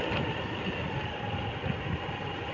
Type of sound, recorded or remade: recorded